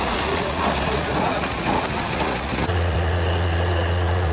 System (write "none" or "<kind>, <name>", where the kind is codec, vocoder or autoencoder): vocoder, Vocos